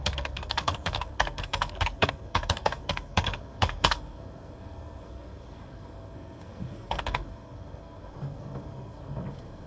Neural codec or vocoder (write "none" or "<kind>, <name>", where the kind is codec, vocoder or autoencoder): codec, SNAC